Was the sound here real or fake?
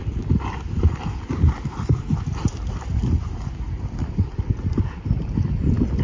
real